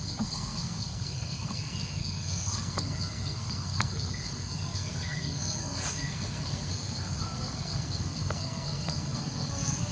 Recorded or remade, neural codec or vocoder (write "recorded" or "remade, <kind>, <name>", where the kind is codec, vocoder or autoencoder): remade, codec, SNAC